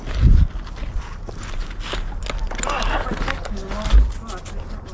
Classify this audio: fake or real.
real